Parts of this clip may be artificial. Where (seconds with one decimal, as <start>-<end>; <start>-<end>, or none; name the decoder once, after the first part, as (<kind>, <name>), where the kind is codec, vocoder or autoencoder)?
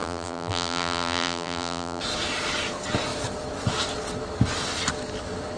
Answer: 0.0-2.0 (vocoder, BigVGAN v2)